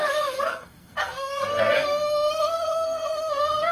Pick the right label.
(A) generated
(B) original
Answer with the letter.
A